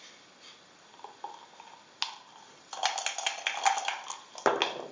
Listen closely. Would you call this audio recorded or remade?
recorded